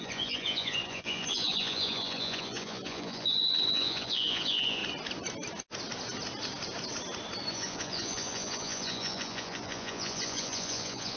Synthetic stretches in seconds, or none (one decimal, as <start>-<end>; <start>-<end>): 0.0-4.8; 7.5-11.2